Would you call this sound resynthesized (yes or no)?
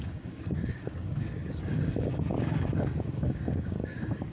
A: yes